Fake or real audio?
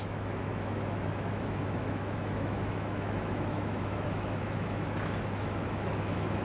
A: fake